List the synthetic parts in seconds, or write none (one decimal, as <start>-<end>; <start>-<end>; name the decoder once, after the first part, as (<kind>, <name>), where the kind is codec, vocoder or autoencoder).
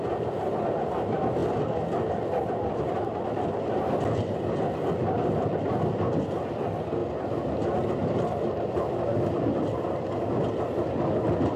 none